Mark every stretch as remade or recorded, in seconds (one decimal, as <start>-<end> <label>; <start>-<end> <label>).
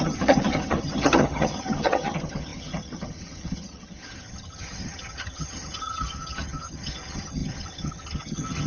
0.0-8.7 remade